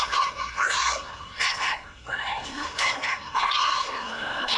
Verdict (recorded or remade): remade